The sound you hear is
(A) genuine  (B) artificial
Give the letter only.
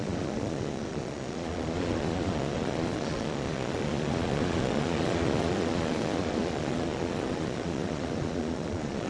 B